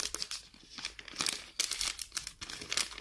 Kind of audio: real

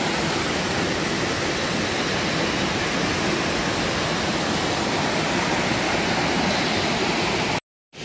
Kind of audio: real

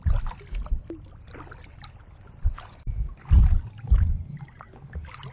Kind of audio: real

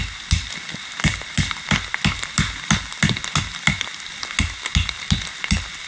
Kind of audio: real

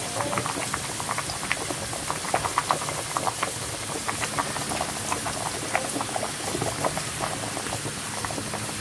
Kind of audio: real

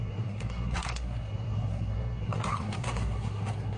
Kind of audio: fake